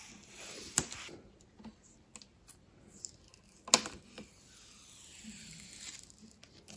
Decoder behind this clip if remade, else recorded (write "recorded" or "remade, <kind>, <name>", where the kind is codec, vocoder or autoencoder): recorded